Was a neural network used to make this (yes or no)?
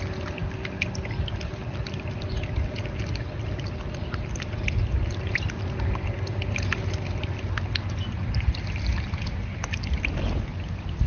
no